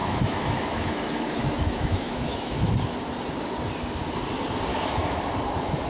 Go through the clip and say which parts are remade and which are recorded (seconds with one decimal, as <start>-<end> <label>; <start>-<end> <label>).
0.0-2.7 remade; 2.7-4.7 recorded; 4.7-5.2 remade; 5.2-5.9 recorded